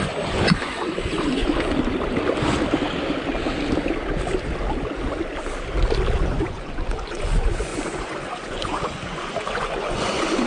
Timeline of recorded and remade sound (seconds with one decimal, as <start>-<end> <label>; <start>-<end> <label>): 0.0-1.4 remade; 1.4-6.2 recorded; 6.2-10.5 remade